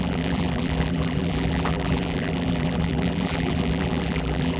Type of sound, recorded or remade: remade